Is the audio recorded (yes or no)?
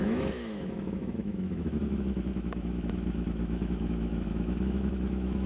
no